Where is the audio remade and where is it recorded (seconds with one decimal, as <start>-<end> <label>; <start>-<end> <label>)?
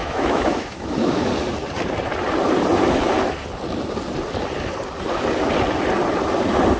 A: 0.0-1.3 remade; 1.3-6.8 recorded